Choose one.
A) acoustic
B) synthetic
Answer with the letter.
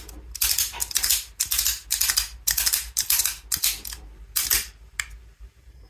A